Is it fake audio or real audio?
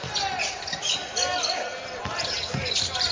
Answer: real